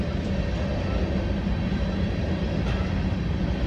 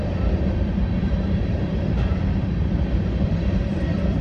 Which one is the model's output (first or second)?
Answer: second